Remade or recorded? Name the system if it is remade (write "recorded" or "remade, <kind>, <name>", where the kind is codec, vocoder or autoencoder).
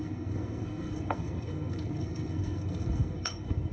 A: remade, codec, SNAC